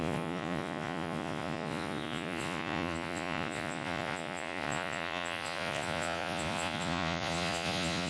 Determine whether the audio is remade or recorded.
remade